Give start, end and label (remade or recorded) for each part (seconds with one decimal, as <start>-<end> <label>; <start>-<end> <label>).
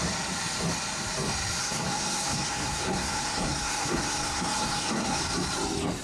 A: 0.0-1.6 recorded; 1.6-5.2 remade; 5.2-6.0 recorded